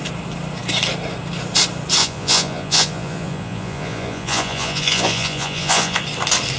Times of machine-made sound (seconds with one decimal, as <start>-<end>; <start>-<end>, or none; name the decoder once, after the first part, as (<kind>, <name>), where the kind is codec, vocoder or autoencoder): 2.0-6.0 (vocoder, Vocos)